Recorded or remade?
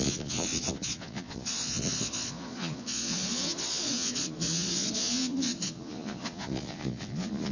remade